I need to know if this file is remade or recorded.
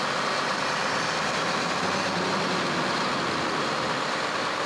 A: recorded